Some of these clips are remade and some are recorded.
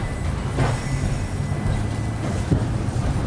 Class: recorded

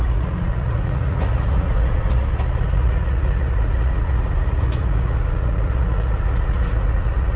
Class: remade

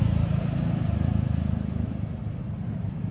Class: recorded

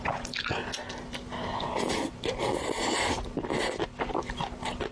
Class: recorded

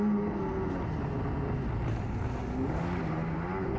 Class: recorded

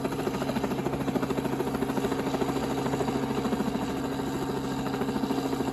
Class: recorded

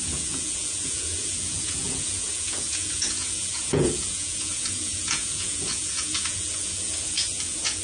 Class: remade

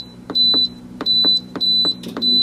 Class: remade